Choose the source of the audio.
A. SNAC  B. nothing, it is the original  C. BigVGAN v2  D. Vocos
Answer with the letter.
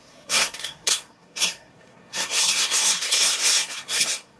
A